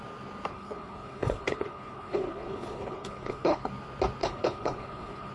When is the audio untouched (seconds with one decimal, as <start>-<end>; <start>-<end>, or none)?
0.0-0.5; 3.7-4.2